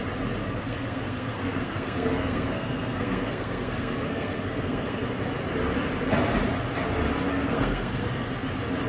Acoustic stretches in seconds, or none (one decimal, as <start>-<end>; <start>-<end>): 0.0-0.4; 5.2-7.3; 8.3-8.9